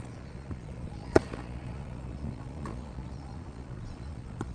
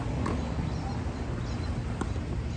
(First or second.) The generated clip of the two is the first